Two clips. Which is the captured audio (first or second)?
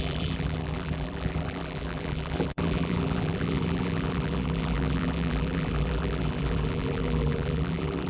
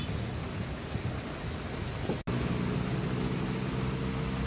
second